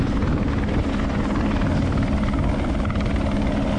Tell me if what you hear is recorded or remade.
recorded